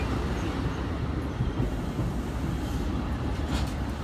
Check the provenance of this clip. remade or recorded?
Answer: recorded